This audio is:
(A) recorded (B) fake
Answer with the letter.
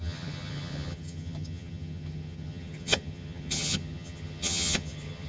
B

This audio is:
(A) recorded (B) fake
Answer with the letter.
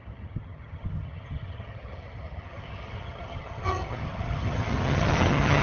B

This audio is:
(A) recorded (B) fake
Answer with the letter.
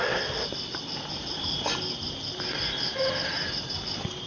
A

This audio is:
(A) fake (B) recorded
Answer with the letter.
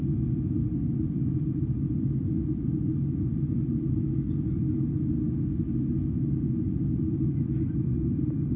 B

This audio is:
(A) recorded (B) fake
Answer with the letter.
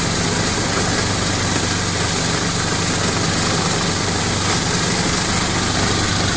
A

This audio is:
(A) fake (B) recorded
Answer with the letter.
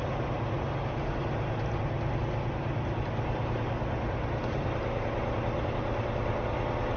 B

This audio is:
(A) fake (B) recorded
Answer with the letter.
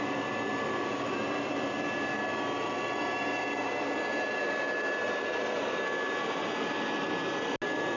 B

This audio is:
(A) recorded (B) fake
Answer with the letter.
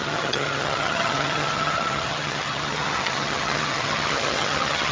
B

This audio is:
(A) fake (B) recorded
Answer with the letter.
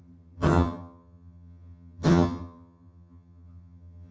A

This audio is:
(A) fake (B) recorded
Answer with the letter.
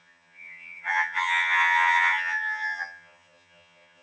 A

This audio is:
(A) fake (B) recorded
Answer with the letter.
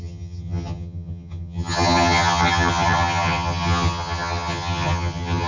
A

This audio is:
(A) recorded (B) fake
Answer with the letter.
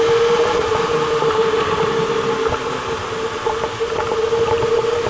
A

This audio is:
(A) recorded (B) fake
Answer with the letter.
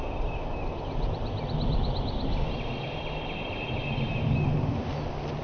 A